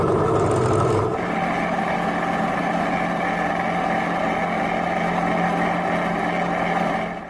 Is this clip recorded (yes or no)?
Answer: yes